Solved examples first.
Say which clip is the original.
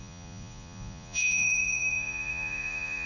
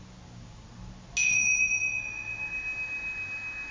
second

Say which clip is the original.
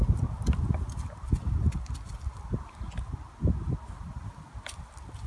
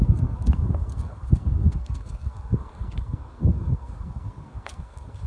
first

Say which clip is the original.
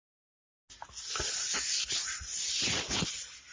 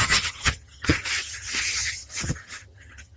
first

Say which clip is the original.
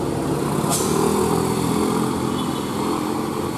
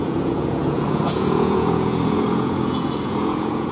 first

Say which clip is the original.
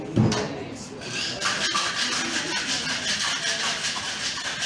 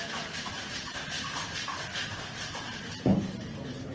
first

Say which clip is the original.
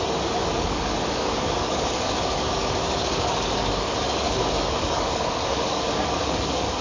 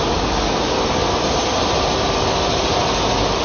second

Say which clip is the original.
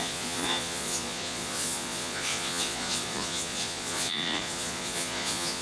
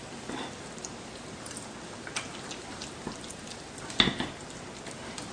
second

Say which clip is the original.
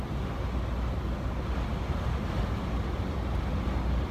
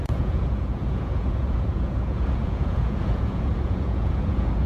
first